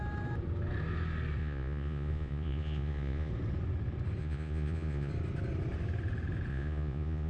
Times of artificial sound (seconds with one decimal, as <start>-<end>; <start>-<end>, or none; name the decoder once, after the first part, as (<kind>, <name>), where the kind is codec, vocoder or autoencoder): 1.4-3.3 (vocoder, Vocos); 4.2-5.1; 6.5-7.3